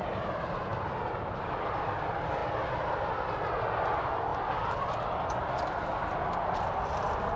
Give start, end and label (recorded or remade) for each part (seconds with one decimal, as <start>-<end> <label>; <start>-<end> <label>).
0.0-7.4 recorded